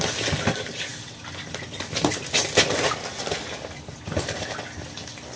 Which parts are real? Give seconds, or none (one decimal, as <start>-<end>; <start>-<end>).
0.0-5.4